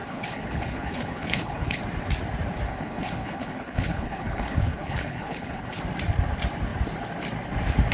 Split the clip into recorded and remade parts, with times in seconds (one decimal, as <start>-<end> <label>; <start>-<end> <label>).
0.0-1.8 remade; 1.8-2.7 recorded; 2.7-5.8 remade; 5.8-7.9 recorded